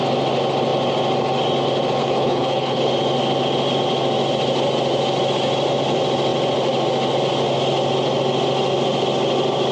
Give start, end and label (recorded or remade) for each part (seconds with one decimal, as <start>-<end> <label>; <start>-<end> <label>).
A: 0.0-2.0 recorded; 2.0-2.9 remade; 2.9-9.7 recorded